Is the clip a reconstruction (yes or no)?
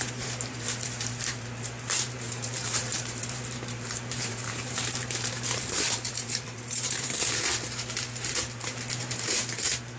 yes